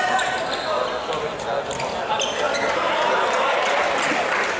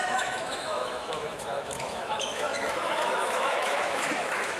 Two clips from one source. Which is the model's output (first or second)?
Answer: second